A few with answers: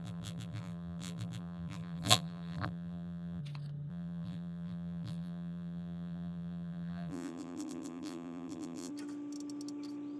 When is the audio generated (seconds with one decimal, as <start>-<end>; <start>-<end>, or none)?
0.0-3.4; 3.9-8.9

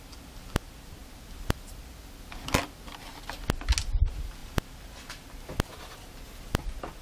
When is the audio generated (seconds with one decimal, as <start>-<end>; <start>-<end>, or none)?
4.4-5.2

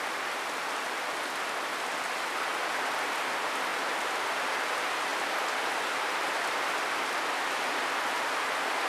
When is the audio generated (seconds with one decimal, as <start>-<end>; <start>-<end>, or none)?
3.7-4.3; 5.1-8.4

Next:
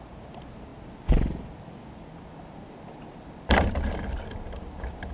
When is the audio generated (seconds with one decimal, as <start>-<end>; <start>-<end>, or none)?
0.0-0.7; 2.3-5.1